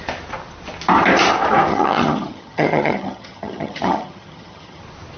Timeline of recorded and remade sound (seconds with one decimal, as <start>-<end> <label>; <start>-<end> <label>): 0.0-1.7 recorded; 1.7-4.8 remade; 4.8-5.2 recorded